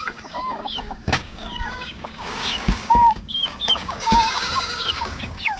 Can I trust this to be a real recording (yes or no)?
no